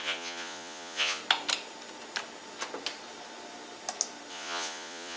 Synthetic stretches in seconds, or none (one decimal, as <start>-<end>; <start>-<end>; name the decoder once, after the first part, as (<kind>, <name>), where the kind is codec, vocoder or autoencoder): 0.0-1.2 (vocoder, Vocos); 4.3-5.2